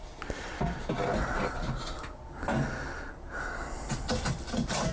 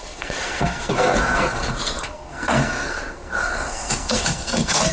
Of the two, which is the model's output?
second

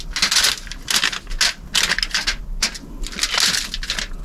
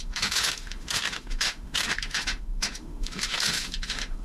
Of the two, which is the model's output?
second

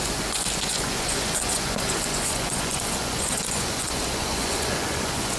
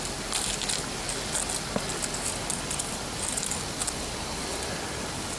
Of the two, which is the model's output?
first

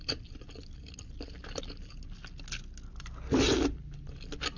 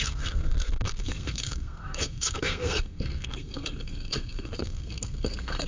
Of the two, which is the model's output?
second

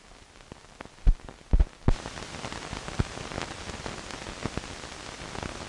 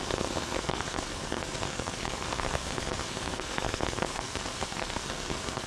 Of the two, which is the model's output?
second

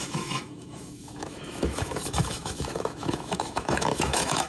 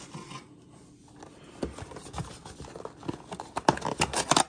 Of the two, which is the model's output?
first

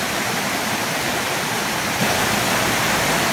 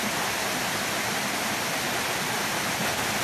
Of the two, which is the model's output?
first